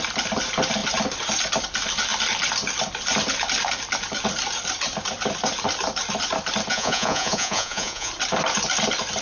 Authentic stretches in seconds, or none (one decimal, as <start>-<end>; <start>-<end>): 0.0-6.7; 8.1-9.2